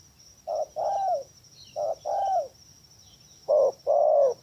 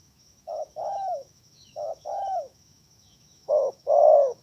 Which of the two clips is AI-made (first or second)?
second